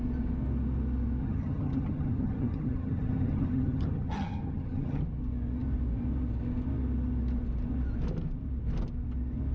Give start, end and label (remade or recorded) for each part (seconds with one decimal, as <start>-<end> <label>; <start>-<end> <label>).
0.0-1.2 recorded; 1.2-5.0 remade; 5.0-9.5 recorded